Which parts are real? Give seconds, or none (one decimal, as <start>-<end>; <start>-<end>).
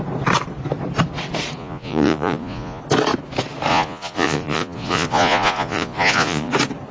0.0-1.6; 2.8-3.7; 6.5-6.9